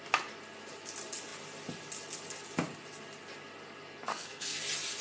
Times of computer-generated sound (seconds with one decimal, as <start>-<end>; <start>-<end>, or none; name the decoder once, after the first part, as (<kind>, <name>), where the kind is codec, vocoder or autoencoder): 4.1-4.6 (codec, SNAC)